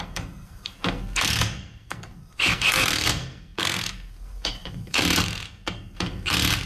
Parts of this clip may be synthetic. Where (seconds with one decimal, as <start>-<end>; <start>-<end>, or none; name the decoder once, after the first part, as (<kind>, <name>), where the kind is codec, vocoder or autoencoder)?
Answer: 0.0-6.7 (codec, SNAC)